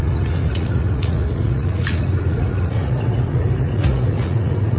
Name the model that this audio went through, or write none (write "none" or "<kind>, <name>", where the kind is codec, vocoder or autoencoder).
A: vocoder, Vocos